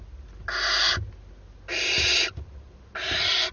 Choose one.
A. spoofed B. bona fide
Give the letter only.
B